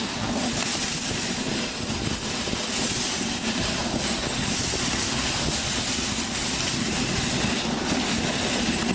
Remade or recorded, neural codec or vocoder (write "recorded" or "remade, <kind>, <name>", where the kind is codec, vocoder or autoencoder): recorded